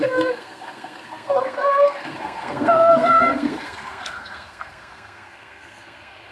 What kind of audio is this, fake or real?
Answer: fake